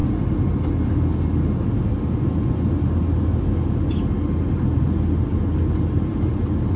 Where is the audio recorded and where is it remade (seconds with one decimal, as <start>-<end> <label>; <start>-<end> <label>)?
0.0-6.8 recorded